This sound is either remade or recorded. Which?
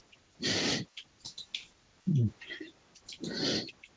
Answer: recorded